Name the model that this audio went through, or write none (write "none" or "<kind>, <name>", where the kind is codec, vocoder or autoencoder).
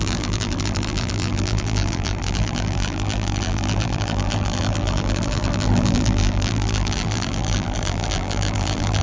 vocoder, BigVGAN v2